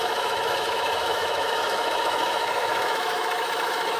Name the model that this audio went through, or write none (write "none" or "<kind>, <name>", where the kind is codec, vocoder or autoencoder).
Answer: autoencoder, DAC-VAE